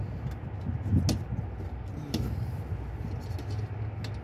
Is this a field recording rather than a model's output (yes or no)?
yes